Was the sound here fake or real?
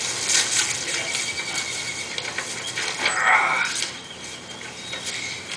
real